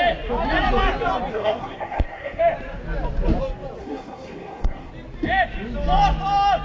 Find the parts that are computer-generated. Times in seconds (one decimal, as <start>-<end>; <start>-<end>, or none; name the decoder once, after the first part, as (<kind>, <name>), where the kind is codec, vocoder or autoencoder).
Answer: 1.3-2.4 (codec, SNAC); 3.8-4.9